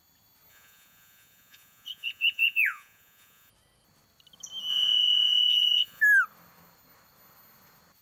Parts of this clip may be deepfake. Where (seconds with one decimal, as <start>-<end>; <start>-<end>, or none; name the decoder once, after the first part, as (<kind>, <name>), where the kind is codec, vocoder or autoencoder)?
0.5-3.5 (vocoder, Vocos); 4.7-6.0